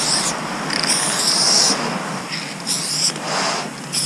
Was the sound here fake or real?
real